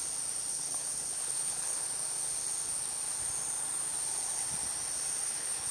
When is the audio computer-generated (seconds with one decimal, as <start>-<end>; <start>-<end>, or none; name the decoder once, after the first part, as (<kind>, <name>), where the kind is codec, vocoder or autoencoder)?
0.5-1.8 (codec, HILCodec); 5.2-5.7